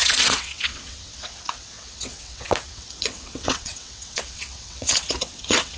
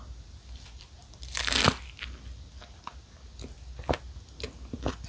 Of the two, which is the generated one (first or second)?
first